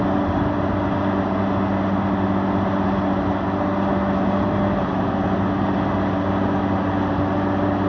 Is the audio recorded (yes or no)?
yes